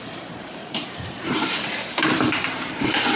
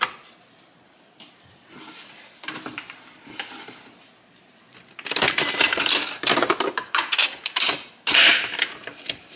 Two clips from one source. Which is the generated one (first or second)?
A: first